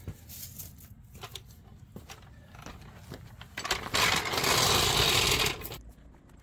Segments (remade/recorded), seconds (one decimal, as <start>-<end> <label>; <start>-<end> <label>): 0.0-6.4 recorded